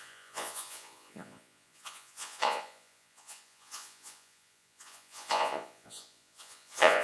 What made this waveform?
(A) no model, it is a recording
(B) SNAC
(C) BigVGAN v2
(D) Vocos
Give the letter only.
D